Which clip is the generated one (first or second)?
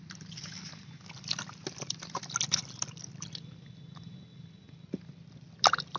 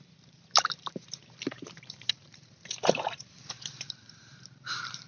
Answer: second